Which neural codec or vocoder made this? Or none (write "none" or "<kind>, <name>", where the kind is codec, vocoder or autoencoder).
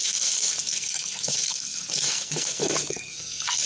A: codec, SNAC